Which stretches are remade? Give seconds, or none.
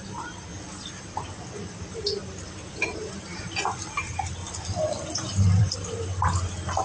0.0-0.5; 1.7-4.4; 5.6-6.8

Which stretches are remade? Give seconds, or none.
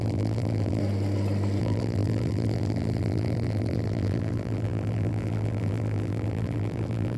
0.0-0.8; 1.6-7.2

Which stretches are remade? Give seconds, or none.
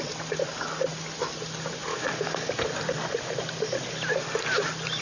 1.9-2.5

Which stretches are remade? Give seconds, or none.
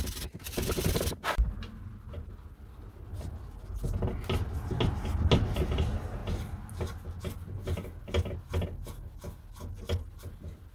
none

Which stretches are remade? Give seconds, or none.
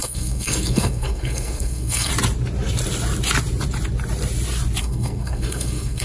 0.0-2.1; 4.8-6.0